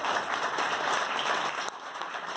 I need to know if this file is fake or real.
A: fake